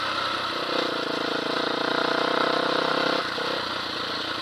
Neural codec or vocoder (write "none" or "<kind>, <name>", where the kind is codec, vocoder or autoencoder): none